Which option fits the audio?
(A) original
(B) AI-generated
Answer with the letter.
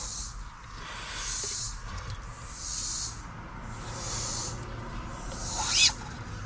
A